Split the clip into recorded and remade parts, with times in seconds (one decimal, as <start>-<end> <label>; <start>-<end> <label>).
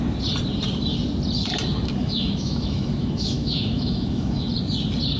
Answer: 0.0-2.0 recorded; 2.0-4.5 remade; 4.5-5.2 recorded